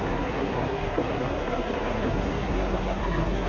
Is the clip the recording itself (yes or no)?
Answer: no